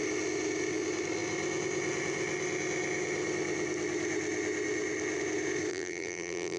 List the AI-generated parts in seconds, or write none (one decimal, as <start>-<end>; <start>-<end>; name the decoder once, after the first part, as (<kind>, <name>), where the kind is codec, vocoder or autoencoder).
5.7-6.6 (vocoder, BigVGAN v2)